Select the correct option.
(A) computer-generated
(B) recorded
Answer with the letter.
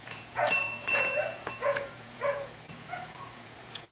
A